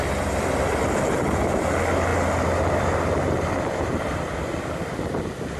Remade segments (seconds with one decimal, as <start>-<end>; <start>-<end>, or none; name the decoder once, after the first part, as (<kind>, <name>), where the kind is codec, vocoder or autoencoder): none